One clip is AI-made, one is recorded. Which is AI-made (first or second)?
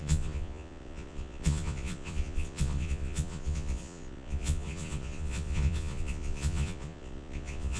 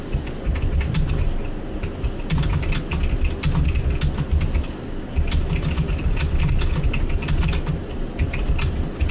first